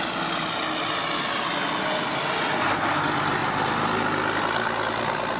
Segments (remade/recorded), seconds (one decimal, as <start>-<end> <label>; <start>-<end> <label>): 0.0-5.4 recorded